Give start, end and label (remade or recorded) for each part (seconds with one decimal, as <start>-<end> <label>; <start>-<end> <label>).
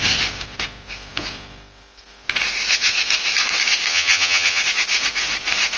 0.0-3.9 recorded; 3.9-4.6 remade; 4.6-5.8 recorded